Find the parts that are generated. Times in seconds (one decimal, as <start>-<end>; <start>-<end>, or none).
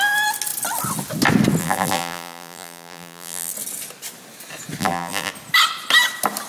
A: 1.6-3.5; 4.8-5.3